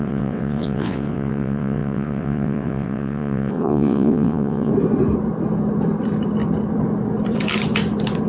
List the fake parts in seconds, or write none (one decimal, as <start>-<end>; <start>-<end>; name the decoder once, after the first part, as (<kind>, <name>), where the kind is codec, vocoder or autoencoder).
0.0-4.7 (vocoder, WaveNeXt)